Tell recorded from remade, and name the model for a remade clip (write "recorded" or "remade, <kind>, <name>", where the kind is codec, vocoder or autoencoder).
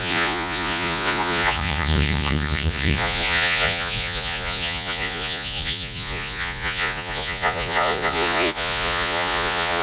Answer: remade, vocoder, Vocos